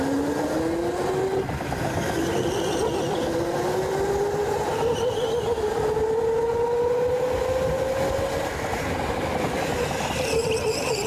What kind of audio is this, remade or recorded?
recorded